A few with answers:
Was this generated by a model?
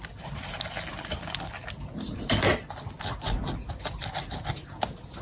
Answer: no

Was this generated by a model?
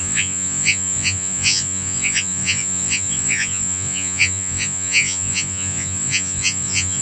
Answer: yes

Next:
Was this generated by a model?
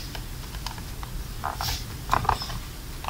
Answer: no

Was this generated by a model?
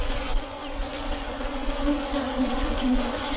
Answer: yes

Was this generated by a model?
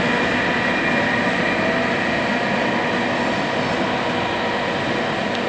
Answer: no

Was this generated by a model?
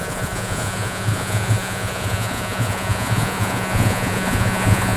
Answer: yes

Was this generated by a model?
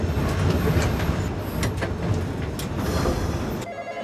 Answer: no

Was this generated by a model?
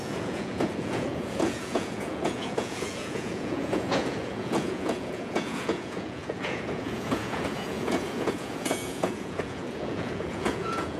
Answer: yes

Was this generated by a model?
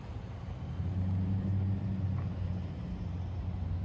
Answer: no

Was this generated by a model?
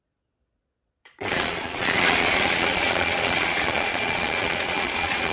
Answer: yes